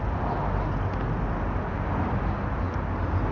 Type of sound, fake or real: real